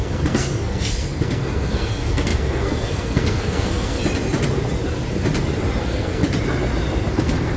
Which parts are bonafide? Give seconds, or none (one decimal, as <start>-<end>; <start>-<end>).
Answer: 4.0-5.8; 6.2-7.1

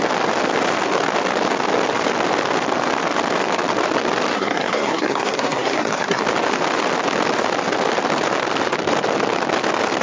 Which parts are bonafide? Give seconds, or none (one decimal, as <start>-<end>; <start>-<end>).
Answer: 0.0-4.3; 6.2-10.0

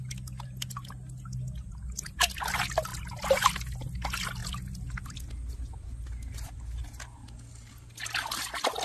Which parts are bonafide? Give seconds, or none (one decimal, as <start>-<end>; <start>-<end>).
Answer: 0.0-8.8

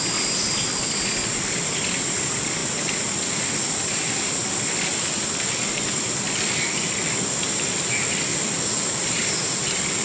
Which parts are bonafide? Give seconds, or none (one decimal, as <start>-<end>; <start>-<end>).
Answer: 0.0-10.0

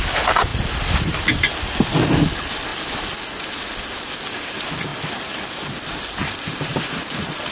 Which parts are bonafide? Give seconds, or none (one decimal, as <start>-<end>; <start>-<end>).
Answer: 0.0-7.5